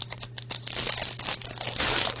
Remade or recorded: recorded